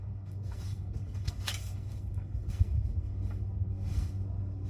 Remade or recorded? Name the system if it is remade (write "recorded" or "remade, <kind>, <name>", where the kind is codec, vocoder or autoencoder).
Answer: remade, codec, SNAC